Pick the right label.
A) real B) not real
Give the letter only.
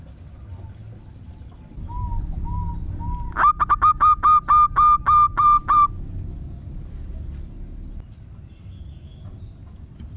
A